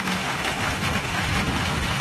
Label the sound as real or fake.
fake